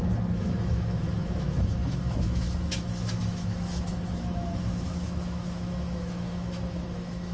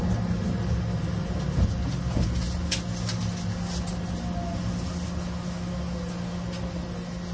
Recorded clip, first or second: second